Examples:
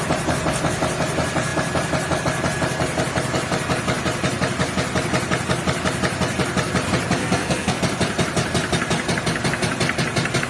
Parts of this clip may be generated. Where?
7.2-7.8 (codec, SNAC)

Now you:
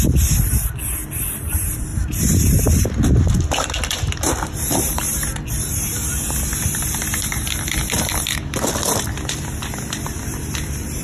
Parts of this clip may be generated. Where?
0.0-11.0 (vocoder, BigVGAN v2)

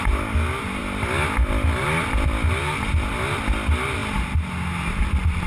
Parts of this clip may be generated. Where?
none

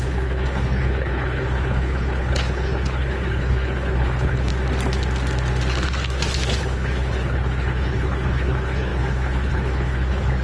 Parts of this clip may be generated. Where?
0.0-4.5 (codec, HILCodec); 6.6-10.4

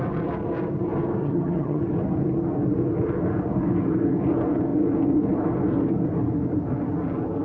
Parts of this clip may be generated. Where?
1.2-1.8 (vocoder, HiFi-GAN)

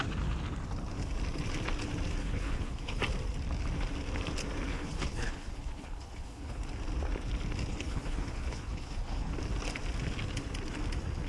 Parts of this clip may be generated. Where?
2.2-3.0 (codec, HILCodec); 4.7-6.6; 7.7-9.3

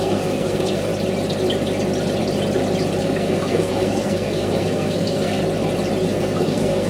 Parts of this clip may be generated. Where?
0.0-0.9 (codec, SNAC); 3.0-5.4; 6.1-6.9